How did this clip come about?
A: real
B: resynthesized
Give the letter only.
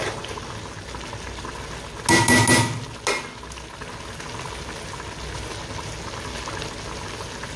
A